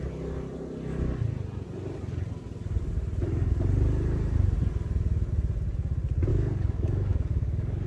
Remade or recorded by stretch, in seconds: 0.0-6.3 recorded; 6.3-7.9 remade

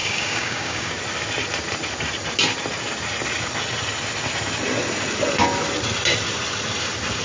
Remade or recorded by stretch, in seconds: 0.0-0.9 remade; 0.9-7.2 recorded